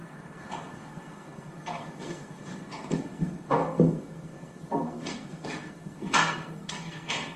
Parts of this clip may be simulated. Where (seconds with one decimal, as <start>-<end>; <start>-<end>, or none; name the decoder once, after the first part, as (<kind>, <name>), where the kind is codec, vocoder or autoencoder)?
0.0-7.4 (codec, SNAC)